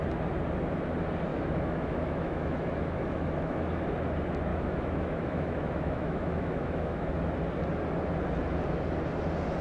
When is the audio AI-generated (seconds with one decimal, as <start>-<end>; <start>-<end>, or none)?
1.3-3.8; 4.5-7.1